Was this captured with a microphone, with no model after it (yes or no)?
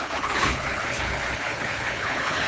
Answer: no